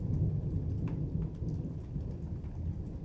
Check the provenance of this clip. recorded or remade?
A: recorded